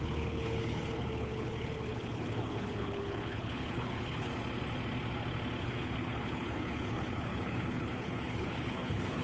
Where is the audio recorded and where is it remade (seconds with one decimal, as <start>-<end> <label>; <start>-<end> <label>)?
0.0-4.3 remade; 4.3-5.6 recorded; 5.6-9.2 remade